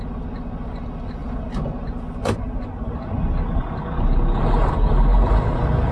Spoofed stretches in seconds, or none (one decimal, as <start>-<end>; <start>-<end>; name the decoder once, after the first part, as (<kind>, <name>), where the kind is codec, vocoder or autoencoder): none